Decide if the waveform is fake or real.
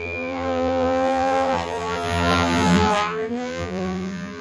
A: fake